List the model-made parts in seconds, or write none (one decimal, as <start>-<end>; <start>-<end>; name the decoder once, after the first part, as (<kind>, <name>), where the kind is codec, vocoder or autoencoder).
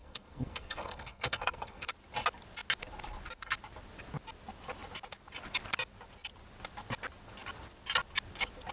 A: 0.0-1.9 (codec, SNAC)